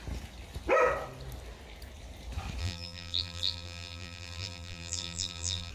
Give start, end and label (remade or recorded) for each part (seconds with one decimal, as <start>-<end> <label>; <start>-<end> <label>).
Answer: 0.0-2.6 recorded; 2.6-5.7 remade